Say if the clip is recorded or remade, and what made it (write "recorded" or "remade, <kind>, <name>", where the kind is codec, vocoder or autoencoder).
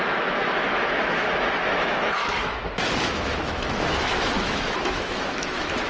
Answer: remade, autoencoder, DAC-VAE